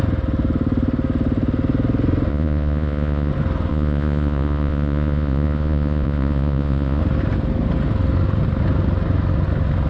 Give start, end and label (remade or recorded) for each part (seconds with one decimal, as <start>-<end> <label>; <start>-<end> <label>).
0.0-2.3 recorded; 2.3-3.3 remade; 3.3-3.7 recorded; 3.7-7.0 remade; 7.0-9.9 recorded